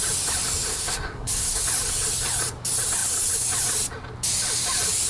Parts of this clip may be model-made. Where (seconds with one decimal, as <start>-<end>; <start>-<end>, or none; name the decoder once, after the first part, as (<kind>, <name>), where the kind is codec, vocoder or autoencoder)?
0.7-1.6 (codec, SNAC)